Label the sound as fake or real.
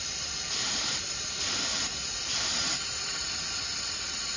real